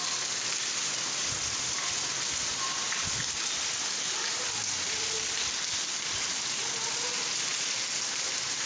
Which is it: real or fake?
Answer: real